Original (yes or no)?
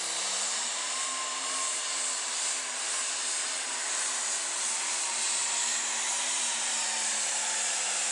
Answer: no